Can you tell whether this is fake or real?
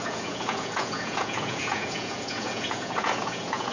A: fake